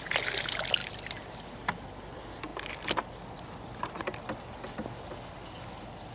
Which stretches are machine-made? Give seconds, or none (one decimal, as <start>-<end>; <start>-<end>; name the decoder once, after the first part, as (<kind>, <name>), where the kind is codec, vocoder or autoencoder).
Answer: none